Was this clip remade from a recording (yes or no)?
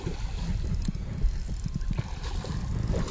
no